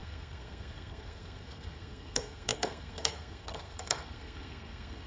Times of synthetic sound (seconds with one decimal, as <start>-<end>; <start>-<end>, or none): 0.0-5.1